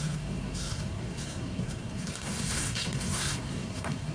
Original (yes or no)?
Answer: no